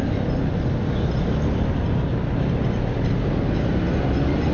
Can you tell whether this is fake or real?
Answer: real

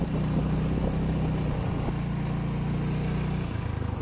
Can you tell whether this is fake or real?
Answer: real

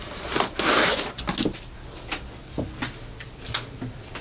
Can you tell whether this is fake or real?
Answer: real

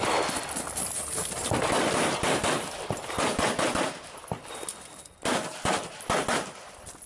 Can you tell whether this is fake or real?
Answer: fake